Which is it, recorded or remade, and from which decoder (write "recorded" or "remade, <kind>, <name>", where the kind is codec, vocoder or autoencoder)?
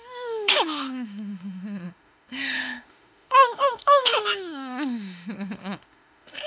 remade, autoencoder, DAC-VAE